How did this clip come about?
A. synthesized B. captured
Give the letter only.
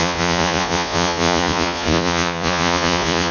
A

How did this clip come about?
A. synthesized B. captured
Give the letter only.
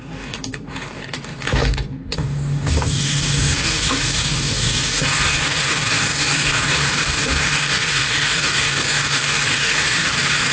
A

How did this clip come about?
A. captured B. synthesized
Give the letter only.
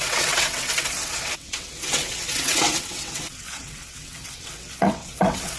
B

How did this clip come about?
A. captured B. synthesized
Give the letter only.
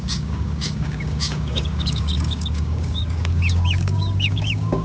B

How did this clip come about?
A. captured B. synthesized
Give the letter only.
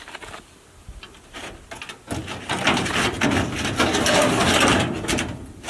A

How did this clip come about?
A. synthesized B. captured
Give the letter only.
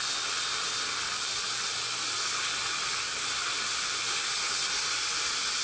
B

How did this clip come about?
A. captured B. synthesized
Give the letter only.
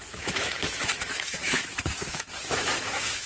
B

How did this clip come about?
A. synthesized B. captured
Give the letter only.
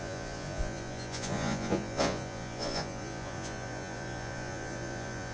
A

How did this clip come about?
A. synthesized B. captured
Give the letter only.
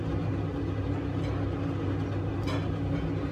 B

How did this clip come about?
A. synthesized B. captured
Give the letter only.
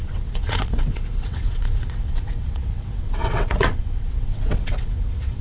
A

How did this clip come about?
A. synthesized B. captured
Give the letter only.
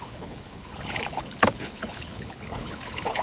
A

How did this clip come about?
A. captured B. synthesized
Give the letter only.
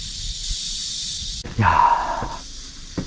A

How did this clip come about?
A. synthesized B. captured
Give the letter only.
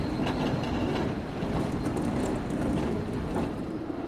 B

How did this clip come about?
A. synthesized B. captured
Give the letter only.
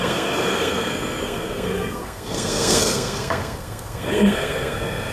A